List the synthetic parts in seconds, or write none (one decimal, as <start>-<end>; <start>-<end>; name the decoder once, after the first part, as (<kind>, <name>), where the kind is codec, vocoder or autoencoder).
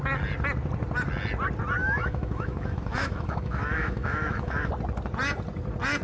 1.8-4.7 (autoencoder, DAC-VAE)